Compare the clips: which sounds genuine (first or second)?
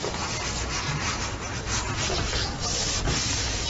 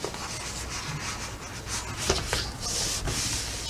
second